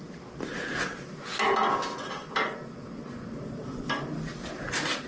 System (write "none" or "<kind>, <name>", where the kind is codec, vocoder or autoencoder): none